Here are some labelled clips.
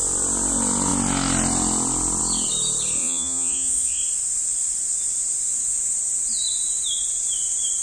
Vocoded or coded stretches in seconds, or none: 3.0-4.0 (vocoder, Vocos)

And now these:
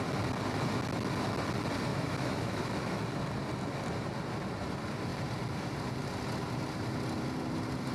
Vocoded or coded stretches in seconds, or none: 1.9-3.0 (autoencoder, DAC-VAE)

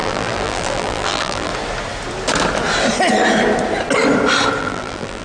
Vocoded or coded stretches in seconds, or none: 0.0-1.5 (vocoder, BigVGAN v2); 4.6-5.2

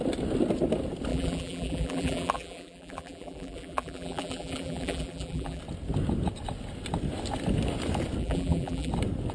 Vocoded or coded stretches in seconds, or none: 1.1-5.6 (vocoder, BigVGAN v2); 8.2-8.9

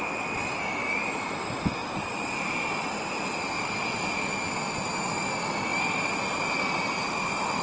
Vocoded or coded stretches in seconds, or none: none

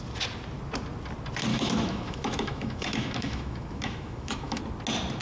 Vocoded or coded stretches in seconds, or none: 1.5-4.6 (autoencoder, DAC-VAE)

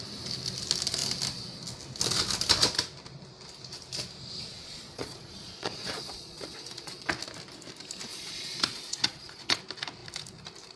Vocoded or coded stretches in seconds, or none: 4.5-7.1 (vocoder, Vocos); 8.1-9.6